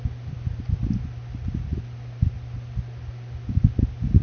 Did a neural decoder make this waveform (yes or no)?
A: no